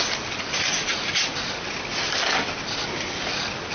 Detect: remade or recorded recorded